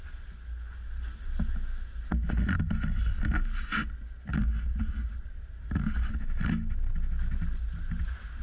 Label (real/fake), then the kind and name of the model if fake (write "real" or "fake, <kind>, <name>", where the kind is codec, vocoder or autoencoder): real